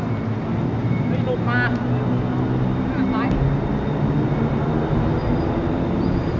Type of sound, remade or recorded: recorded